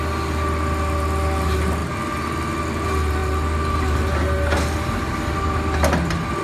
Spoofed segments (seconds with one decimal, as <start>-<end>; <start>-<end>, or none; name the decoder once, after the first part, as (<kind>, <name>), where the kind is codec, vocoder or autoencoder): none

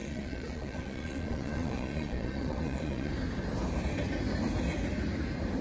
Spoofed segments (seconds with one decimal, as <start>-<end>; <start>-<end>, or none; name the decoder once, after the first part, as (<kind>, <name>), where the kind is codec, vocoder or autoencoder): 0.0-3.1 (vocoder, Vocos)

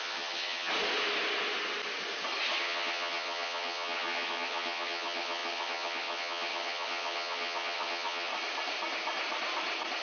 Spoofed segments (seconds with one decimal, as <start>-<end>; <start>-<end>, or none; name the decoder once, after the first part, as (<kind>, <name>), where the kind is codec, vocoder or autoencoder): 0.0-0.7 (vocoder, HiFi-GAN); 2.6-8.3